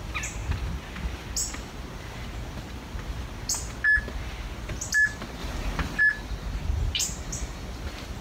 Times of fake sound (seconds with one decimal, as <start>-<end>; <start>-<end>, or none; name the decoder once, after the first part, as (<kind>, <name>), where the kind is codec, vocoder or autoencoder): none